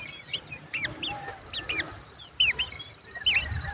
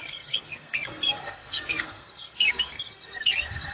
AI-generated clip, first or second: second